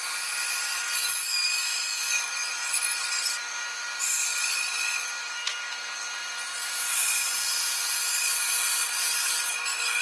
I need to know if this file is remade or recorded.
recorded